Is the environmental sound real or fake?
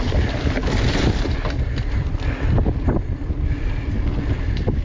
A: real